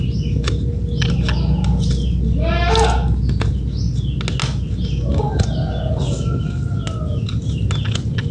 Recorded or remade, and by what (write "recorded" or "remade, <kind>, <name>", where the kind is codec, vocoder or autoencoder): recorded